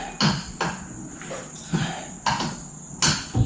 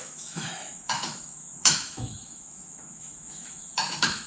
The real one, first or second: first